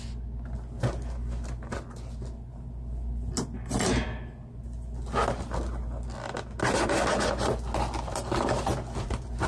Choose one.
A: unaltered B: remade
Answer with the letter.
A